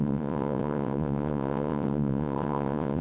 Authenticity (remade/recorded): remade